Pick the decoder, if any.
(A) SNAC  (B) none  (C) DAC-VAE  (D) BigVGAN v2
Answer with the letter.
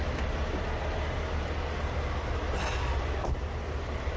B